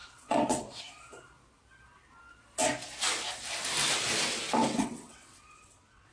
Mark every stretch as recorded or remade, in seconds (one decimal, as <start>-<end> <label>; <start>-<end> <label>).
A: 0.0-0.8 remade; 0.8-4.6 recorded; 4.6-6.1 remade